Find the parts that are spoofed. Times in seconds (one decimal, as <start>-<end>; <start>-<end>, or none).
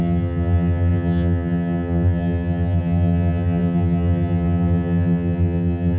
0.0-6.0